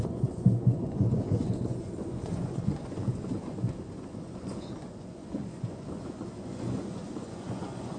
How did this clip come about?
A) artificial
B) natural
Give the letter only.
A